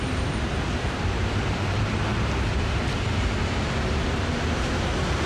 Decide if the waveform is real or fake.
fake